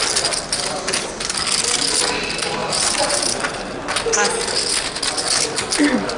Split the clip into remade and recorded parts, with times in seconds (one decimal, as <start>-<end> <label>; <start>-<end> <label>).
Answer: 0.0-2.6 recorded; 2.6-3.2 remade; 3.2-6.2 recorded